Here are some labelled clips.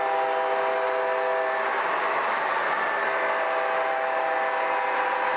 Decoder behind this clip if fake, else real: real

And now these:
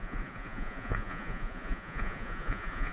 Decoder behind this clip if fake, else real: fake, vocoder, Vocos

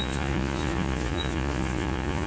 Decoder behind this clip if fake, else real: fake, vocoder, Vocos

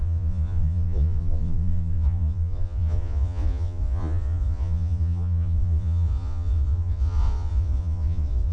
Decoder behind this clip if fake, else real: fake, vocoder, Vocos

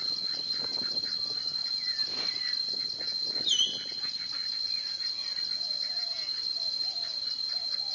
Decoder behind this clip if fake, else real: real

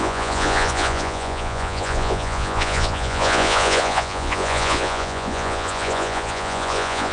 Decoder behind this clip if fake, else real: fake, vocoder, Vocos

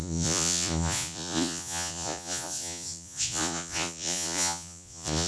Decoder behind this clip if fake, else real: fake, vocoder, Vocos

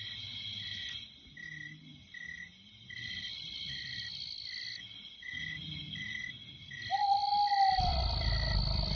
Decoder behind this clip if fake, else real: real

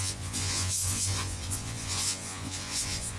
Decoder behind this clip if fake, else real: fake, vocoder, Vocos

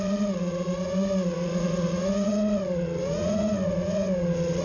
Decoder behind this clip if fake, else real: fake, vocoder, Vocos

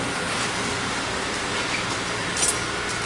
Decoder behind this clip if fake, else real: real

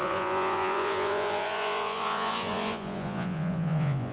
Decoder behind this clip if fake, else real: fake, vocoder, Vocos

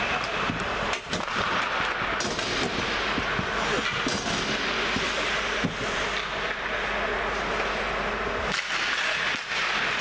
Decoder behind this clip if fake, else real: real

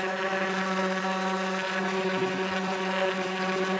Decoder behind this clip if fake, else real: real